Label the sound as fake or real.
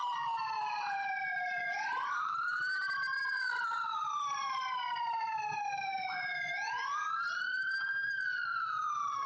fake